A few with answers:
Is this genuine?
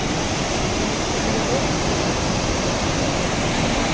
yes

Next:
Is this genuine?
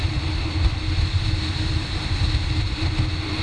yes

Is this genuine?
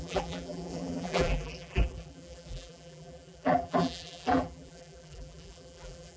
no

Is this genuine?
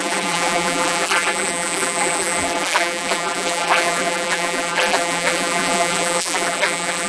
no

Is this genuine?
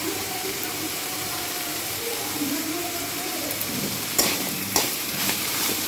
no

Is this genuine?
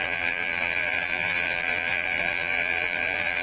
no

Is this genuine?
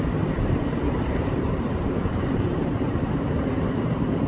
no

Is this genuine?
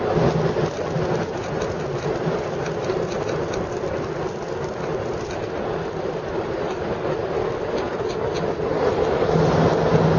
yes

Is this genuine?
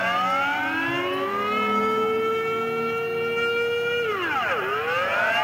yes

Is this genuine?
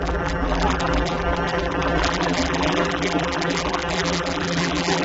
no